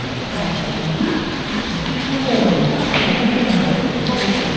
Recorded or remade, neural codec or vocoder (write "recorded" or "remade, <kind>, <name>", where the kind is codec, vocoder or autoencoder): remade, vocoder, BigVGAN v2